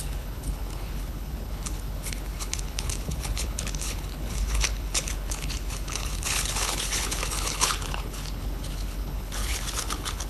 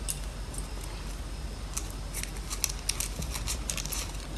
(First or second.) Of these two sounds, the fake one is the first